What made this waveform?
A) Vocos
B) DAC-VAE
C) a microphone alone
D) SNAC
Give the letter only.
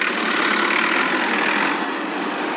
C